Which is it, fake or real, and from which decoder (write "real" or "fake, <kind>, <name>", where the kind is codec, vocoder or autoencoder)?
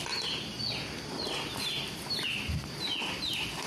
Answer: real